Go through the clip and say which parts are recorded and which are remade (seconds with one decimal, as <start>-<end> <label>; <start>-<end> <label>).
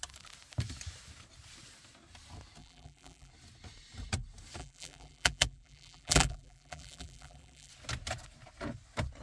0.0-2.6 recorded; 2.6-3.3 remade; 3.3-4.6 recorded; 4.6-7.7 remade; 7.7-9.2 recorded